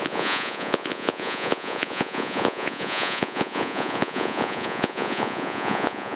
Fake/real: fake